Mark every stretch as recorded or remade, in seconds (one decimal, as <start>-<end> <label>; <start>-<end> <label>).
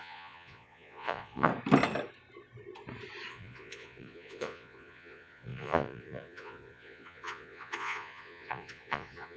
0.0-1.5 remade; 1.5-3.3 recorded; 3.3-9.4 remade